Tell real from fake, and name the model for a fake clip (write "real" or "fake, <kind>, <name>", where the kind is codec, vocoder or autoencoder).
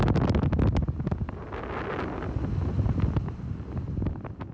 real